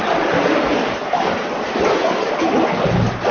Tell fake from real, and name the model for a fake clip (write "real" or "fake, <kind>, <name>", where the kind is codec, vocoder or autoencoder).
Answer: real